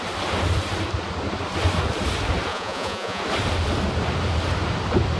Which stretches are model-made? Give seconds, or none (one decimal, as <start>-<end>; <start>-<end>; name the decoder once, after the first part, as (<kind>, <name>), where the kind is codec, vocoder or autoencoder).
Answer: 2.5-3.2 (vocoder, Vocos)